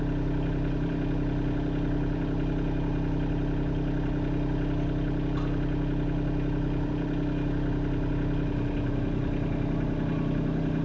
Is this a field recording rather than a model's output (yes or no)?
yes